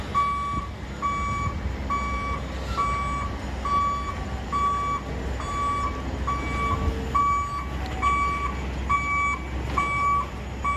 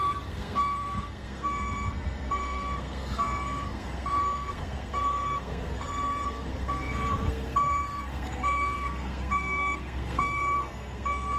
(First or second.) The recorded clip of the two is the first